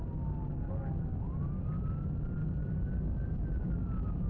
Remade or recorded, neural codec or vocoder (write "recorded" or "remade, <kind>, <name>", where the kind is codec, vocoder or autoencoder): recorded